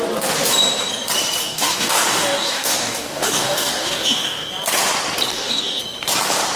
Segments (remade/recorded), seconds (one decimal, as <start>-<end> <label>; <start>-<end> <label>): 0.0-1.4 recorded; 1.4-4.5 remade; 4.5-5.3 recorded; 5.3-5.8 remade; 5.8-6.6 recorded